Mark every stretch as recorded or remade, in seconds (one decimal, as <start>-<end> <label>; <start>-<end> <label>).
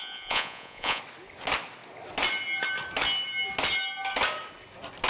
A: 0.0-1.0 remade; 1.0-5.1 recorded